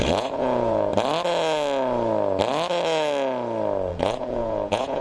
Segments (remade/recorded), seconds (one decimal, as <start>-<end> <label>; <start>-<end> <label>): 0.0-0.9 remade; 0.9-3.9 recorded; 3.9-5.0 remade